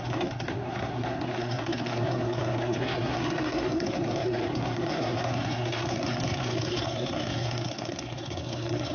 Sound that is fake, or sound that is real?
fake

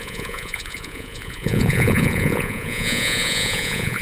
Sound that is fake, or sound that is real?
fake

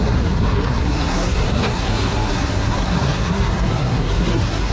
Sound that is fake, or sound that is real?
fake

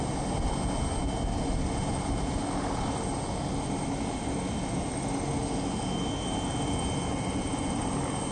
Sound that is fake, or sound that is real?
real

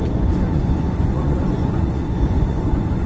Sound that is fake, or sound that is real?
fake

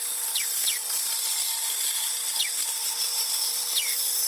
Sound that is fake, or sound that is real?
real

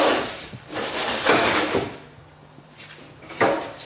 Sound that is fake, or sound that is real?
fake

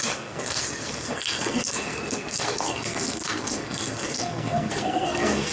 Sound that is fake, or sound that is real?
fake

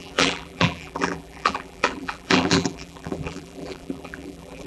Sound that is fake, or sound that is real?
fake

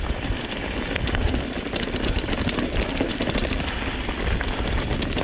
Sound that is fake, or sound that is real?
real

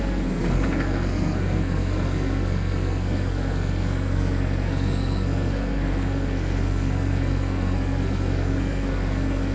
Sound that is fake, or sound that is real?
fake